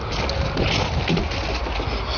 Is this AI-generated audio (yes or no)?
no